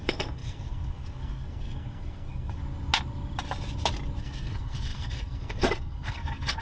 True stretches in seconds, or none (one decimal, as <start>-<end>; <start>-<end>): 2.6-4.2